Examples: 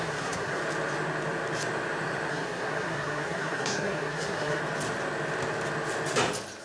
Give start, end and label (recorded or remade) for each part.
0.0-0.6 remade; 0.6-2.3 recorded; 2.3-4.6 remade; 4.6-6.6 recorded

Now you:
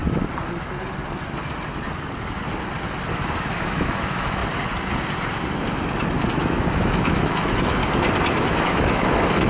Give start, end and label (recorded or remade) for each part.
0.0-3.5 recorded; 3.5-4.4 remade; 4.4-6.3 recorded; 6.3-7.8 remade; 7.8-8.6 recorded; 8.6-9.5 remade

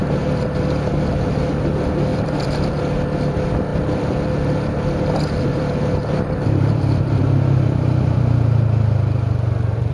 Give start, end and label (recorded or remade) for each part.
0.0-2.1 recorded; 2.1-2.7 remade; 2.7-3.7 recorded; 3.7-8.2 remade; 8.2-9.9 recorded

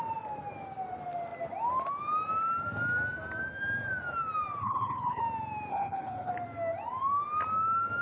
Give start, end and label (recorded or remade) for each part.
0.0-4.6 recorded; 4.6-5.2 remade; 5.2-5.7 recorded; 5.7-6.3 remade; 6.3-8.0 recorded

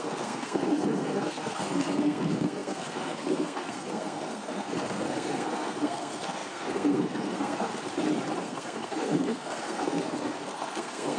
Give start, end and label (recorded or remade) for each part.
0.0-7.7 remade; 7.7-8.4 recorded; 8.4-11.2 remade

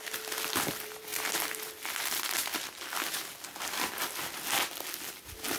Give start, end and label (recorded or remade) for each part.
0.0-5.6 recorded

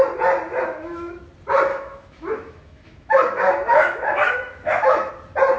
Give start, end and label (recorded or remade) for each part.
0.0-0.5 recorded; 0.5-1.1 remade; 1.1-1.7 recorded; 1.7-5.1 remade; 5.1-5.6 recorded